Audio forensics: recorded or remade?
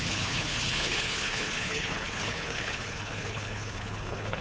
remade